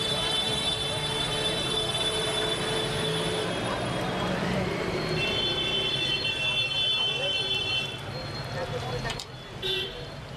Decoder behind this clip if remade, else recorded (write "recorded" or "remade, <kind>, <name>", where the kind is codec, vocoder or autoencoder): remade, vocoder, BigVGAN v2